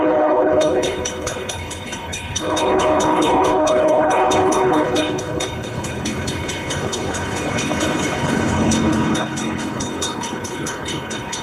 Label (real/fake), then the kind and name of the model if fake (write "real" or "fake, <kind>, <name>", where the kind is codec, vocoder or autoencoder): fake, codec, HILCodec